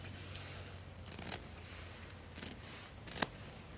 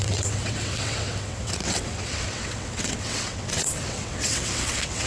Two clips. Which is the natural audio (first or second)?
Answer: first